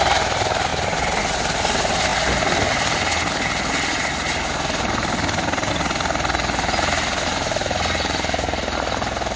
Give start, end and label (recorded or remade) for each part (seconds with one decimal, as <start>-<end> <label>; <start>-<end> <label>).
0.0-9.4 recorded